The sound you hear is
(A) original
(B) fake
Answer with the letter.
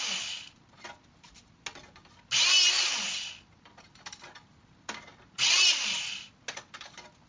A